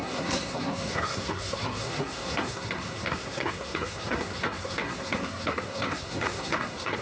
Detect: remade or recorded remade